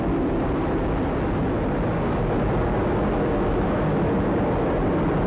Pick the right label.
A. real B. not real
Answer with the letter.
A